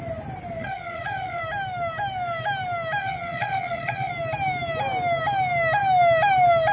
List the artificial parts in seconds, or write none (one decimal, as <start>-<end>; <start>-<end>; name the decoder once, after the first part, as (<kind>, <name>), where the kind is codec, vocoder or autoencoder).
0.6-1.4 (vocoder, WaveNeXt); 3.0-4.1